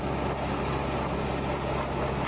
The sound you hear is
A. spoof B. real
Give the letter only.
B